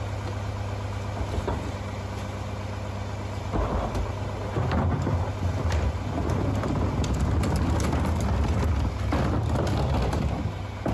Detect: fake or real real